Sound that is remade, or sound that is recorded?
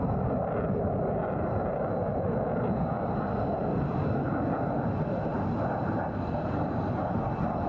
recorded